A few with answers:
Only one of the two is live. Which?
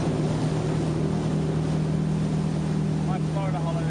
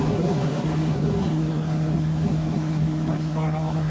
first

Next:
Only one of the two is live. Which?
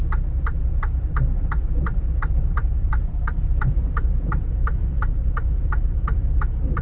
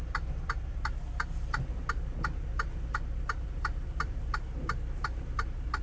second